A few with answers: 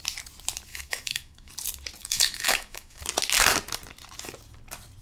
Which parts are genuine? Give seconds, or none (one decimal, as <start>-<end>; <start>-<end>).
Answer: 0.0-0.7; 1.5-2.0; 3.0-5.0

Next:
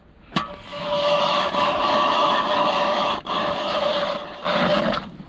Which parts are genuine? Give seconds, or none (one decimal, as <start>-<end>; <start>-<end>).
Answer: 0.0-0.7; 3.9-5.3

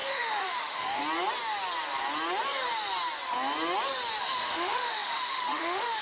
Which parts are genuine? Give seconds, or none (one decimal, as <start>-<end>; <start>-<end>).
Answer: 1.0-4.2

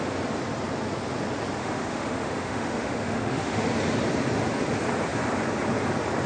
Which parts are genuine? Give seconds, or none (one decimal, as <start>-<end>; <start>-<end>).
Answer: 0.0-1.6; 3.7-6.3

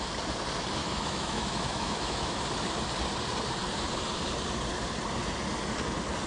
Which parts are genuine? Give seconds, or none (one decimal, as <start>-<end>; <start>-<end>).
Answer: 0.0-0.8; 2.4-6.3